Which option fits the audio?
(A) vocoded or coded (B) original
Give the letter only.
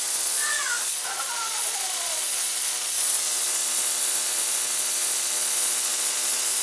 A